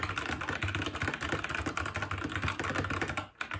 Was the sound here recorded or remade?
recorded